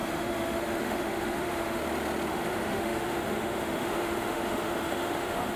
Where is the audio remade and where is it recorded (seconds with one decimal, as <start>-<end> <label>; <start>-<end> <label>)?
0.0-1.8 remade; 1.8-2.3 recorded; 2.3-5.6 remade